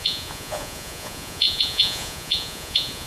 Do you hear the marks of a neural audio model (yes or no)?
yes